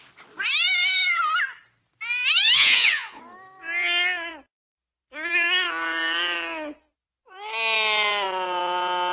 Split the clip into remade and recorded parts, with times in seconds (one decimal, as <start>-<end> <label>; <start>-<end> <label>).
0.0-2.6 recorded; 2.6-3.2 remade; 3.2-9.1 recorded